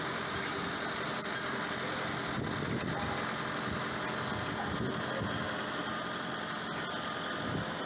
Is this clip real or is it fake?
real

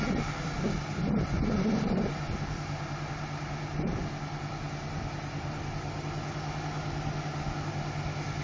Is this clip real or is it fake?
real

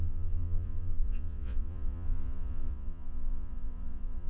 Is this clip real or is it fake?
fake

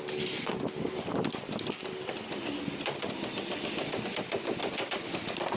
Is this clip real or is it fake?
real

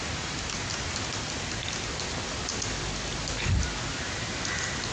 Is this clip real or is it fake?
real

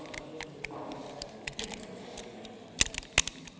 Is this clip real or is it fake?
real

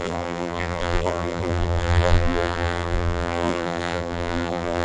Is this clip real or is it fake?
fake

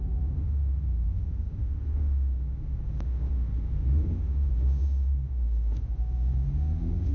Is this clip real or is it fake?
fake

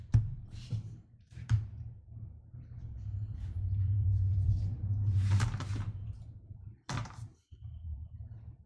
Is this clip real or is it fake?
fake